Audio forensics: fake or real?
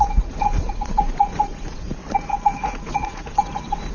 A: fake